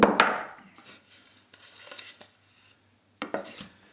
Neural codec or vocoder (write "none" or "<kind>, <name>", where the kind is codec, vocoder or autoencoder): none